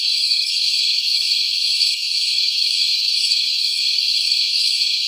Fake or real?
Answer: fake